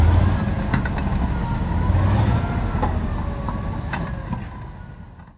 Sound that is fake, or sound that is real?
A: real